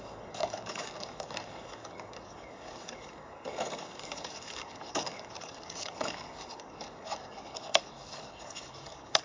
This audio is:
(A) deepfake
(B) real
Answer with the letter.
A